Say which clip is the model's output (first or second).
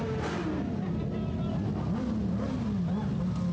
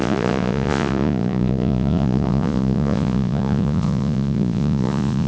second